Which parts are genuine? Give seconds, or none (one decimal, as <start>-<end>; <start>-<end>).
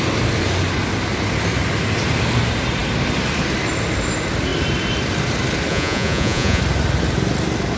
0.0-5.7; 6.6-7.8